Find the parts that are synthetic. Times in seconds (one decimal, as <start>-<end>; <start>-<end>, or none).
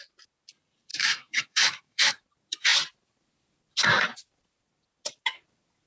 0.9-2.2